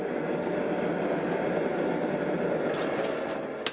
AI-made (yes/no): no